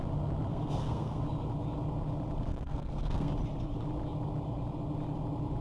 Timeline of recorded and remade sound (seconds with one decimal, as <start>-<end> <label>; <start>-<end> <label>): 0.0-0.5 recorded; 0.5-1.2 remade; 1.2-2.5 recorded; 2.5-3.3 remade; 3.3-5.6 recorded